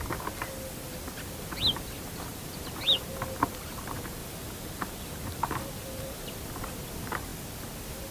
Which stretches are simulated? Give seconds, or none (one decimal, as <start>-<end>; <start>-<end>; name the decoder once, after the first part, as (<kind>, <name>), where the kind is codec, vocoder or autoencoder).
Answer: 2.3-2.8 (vocoder, BigVGAN v2); 4.2-6.4

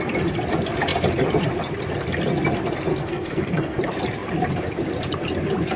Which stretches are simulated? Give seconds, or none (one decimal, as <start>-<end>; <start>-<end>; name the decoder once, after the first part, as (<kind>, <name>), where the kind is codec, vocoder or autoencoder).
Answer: 2.9-3.8 (codec, SNAC)

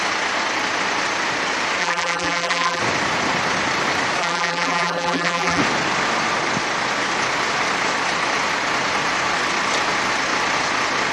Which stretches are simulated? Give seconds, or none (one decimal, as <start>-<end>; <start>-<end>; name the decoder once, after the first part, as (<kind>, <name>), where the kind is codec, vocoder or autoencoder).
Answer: 1.8-2.8 (vocoder, BigVGAN v2); 4.2-5.6

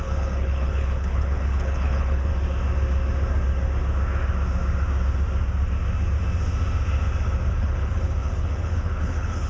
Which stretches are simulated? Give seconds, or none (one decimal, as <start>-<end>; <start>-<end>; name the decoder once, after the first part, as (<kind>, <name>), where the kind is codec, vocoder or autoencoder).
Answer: 0.0-2.3 (codec, HILCodec); 7.5-9.5

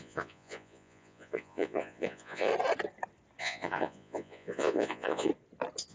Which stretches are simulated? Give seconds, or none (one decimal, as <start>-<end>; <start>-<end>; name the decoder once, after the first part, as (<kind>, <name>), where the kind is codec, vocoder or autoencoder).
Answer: 0.0-2.5 (vocoder, Vocos); 3.4-5.3